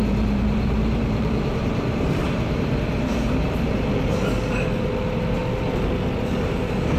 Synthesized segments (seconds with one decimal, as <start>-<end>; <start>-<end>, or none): 0.0-4.2